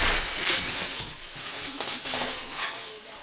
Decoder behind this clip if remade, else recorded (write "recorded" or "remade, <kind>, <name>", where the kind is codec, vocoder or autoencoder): remade, codec, SNAC